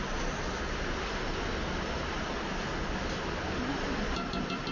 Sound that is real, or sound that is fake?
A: real